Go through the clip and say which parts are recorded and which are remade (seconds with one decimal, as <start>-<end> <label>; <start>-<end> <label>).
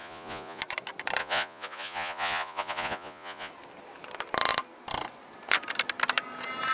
0.0-0.6 remade; 0.6-1.2 recorded; 1.2-3.5 remade; 3.5-6.7 recorded